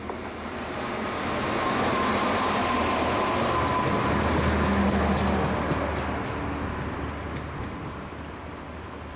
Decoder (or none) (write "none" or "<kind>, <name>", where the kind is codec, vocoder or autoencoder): none